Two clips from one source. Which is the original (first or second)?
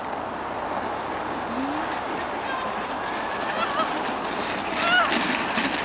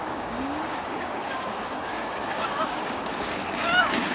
first